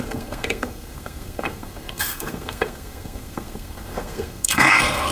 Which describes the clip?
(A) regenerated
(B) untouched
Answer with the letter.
A